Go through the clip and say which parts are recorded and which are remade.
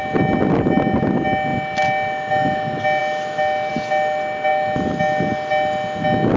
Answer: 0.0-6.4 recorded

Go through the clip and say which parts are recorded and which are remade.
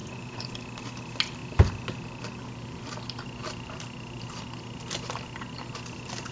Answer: 0.0-0.5 remade; 0.5-6.3 recorded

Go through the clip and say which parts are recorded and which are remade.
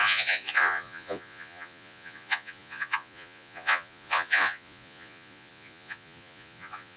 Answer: 0.0-7.0 remade